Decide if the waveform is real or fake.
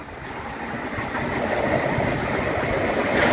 real